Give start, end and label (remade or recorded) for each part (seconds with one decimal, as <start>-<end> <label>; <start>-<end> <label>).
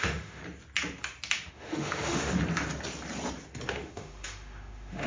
0.0-0.4 remade; 0.4-1.5 recorded; 1.5-2.3 remade; 2.3-3.7 recorded; 3.7-5.1 remade